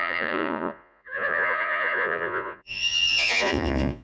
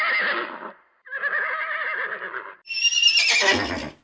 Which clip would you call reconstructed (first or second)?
first